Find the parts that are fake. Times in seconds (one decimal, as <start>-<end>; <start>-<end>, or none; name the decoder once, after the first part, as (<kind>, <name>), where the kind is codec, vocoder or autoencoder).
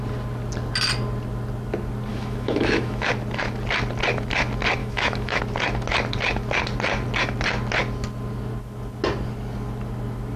2.1-3.1 (autoencoder, DAC-VAE); 4.8-5.4